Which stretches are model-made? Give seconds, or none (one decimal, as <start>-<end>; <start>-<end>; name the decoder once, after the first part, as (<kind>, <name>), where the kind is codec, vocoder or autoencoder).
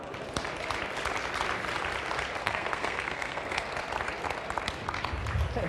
2.4-3.7 (codec, SNAC)